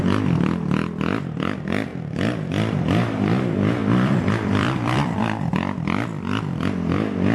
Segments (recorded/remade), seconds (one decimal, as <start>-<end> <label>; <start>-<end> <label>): 0.0-3.8 recorded; 3.8-5.2 remade; 5.2-7.3 recorded